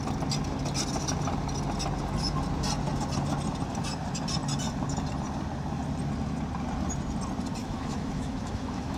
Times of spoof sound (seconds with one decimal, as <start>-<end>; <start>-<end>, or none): 7.6-9.0